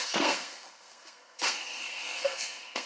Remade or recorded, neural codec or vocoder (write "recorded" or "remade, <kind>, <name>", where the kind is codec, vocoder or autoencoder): remade, codec, SNAC